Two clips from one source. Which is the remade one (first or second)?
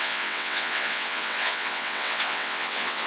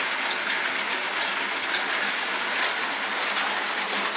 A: first